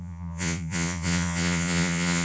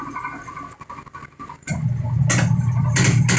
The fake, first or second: first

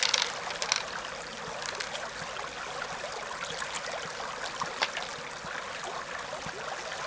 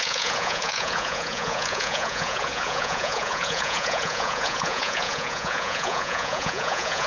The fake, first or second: second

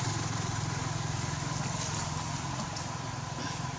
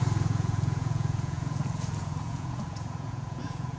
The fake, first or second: second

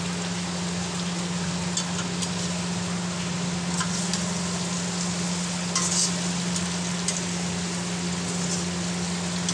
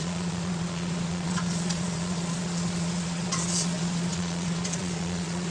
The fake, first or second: second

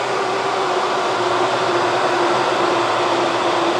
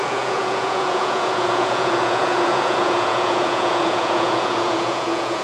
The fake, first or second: second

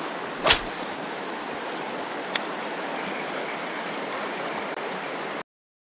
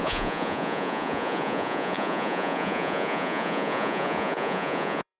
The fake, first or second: second